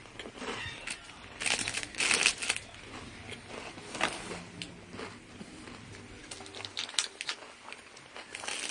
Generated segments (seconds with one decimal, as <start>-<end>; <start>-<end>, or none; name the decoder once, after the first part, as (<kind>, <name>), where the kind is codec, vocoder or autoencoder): none